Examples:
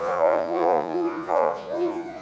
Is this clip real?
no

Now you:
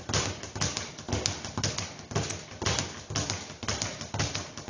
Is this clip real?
yes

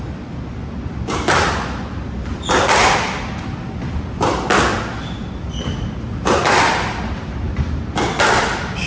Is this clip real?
yes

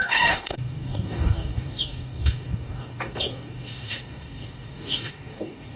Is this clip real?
no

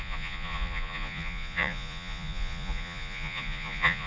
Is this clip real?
no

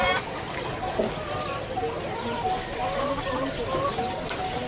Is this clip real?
yes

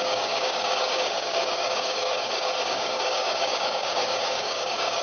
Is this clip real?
no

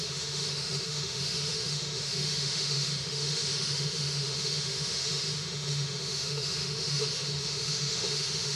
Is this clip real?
no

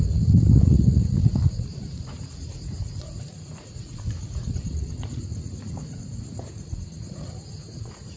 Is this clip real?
no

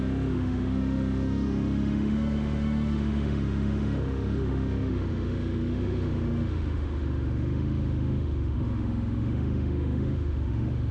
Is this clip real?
no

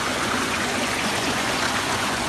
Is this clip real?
no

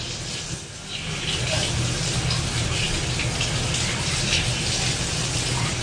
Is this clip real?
yes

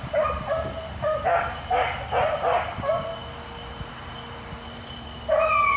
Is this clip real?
yes